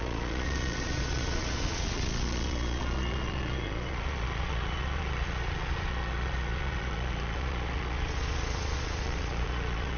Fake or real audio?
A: fake